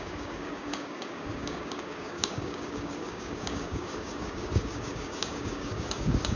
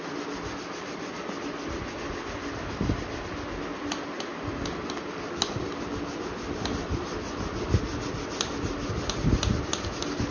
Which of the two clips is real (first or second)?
second